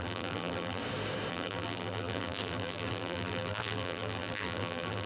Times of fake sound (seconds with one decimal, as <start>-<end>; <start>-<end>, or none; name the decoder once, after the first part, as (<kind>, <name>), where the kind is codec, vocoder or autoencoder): 0.0-0.8 (vocoder, BigVGAN v2); 1.3-5.1